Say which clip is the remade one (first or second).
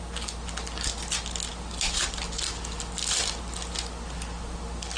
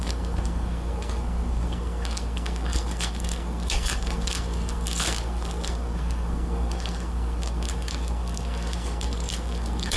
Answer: second